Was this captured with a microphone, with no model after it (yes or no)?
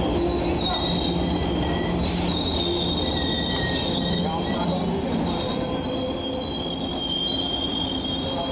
yes